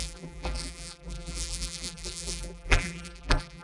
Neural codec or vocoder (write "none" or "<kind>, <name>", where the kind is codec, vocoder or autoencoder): vocoder, BigVGAN v2